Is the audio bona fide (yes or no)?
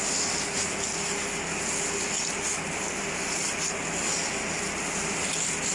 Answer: yes